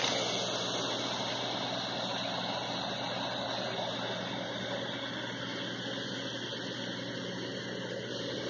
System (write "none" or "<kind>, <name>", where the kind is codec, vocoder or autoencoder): none